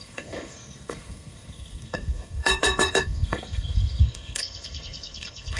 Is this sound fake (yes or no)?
yes